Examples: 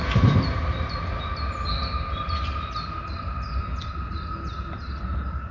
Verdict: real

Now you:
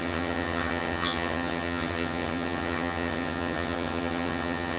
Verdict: fake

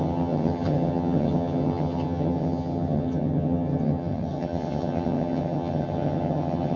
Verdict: fake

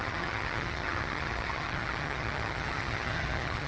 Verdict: fake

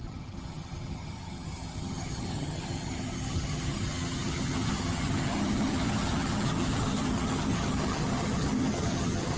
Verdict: fake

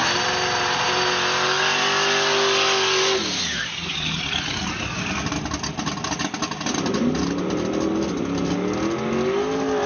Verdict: real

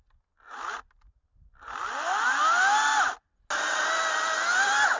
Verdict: real